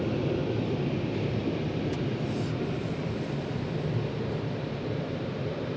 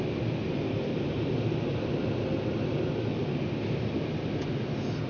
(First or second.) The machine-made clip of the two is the first